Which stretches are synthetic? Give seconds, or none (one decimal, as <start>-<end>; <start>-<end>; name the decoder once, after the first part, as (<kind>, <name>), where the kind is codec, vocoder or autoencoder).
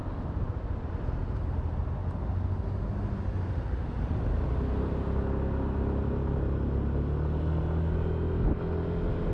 0.0-0.9 (vocoder, BigVGAN v2)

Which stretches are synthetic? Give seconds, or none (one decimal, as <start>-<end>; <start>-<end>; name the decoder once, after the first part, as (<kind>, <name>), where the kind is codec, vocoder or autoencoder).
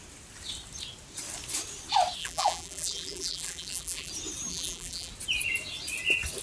2.2-4.1 (vocoder, BigVGAN v2); 4.5-5.1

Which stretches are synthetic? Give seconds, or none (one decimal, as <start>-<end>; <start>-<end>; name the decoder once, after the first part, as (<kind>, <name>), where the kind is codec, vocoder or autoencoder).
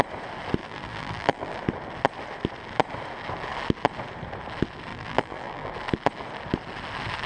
0.6-1.6 (vocoder, BigVGAN v2); 4.9-5.7